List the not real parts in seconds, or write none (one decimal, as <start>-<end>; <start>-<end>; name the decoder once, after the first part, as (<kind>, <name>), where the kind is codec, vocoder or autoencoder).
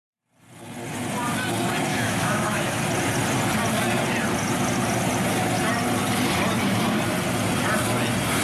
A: 1.9-2.8 (autoencoder, DAC-VAE)